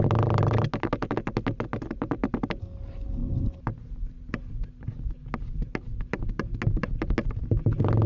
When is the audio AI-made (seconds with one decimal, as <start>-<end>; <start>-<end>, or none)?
none